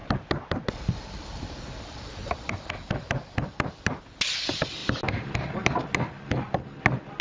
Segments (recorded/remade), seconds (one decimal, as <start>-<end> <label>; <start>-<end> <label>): 0.0-7.2 recorded